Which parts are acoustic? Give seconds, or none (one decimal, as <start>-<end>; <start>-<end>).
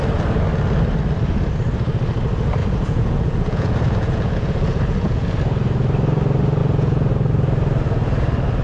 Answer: 0.0-2.6; 5.4-6.6; 7.1-8.6